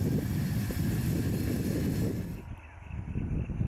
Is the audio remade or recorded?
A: recorded